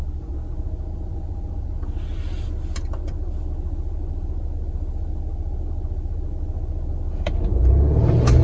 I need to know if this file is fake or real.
real